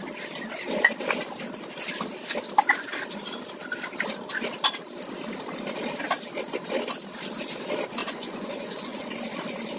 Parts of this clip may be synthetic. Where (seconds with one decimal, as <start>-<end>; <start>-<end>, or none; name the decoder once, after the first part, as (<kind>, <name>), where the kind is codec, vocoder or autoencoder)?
8.0-9.1 (vocoder, Vocos)